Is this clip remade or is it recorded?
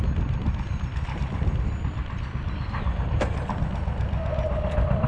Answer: recorded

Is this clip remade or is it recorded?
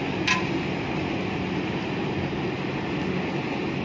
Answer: recorded